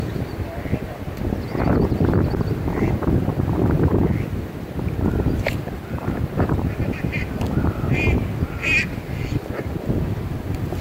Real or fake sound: real